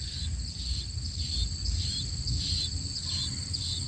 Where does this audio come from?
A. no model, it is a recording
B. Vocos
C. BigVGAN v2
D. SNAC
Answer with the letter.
A